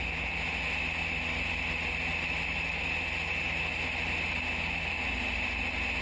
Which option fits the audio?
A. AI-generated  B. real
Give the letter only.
B